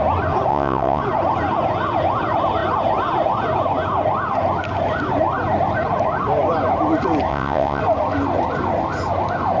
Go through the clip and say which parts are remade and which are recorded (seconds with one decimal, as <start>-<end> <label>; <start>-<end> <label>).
0.0-0.5 recorded; 0.5-1.0 remade; 1.0-7.3 recorded; 7.3-7.8 remade; 7.8-9.6 recorded